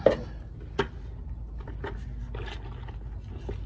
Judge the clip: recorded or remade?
recorded